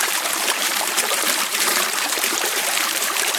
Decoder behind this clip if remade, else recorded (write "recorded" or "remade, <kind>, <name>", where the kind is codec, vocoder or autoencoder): remade, vocoder, BigVGAN v2